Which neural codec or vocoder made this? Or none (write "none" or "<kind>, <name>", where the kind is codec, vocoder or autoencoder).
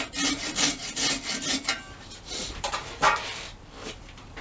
vocoder, BigVGAN v2